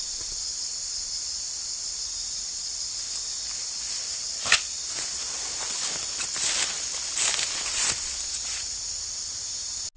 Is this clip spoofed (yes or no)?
no